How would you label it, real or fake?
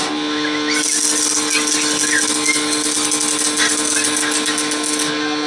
real